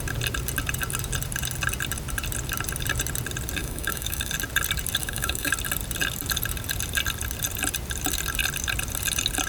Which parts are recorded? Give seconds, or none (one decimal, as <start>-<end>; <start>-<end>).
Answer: 0.0-3.6; 4.3-5.0; 5.5-9.5